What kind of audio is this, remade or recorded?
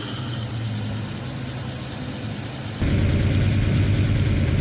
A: recorded